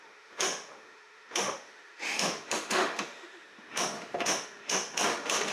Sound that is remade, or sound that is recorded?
remade